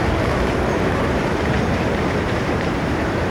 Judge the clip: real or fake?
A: fake